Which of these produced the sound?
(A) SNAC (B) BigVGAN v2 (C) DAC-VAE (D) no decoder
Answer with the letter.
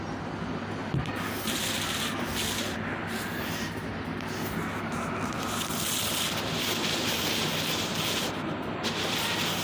D